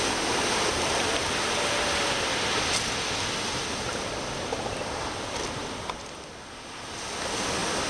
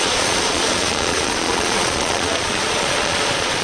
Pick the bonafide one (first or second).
first